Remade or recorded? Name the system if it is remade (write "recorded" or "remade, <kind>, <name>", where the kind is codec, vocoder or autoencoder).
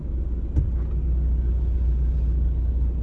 recorded